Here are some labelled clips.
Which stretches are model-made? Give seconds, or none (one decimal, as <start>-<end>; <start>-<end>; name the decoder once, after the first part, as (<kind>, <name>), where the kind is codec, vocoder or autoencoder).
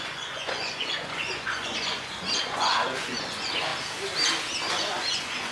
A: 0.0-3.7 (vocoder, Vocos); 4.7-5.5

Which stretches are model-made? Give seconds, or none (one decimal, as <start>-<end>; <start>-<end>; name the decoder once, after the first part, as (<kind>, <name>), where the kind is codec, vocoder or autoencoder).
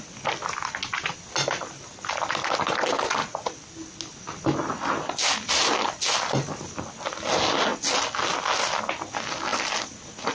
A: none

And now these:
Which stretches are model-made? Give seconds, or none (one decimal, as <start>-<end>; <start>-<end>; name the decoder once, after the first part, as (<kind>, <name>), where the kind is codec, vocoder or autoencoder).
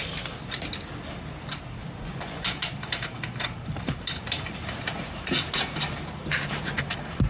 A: 1.8-2.7 (vocoder, Vocos)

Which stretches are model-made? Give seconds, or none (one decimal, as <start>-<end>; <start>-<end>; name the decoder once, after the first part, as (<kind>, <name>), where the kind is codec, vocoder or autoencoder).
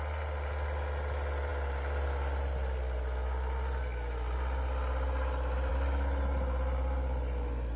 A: none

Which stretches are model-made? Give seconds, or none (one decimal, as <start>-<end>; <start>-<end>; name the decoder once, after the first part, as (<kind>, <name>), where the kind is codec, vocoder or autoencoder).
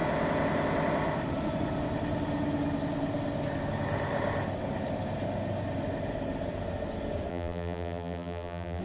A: 7.3-8.8 (vocoder, BigVGAN v2)